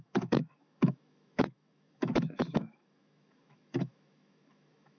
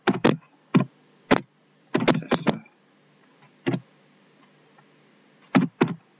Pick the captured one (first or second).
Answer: second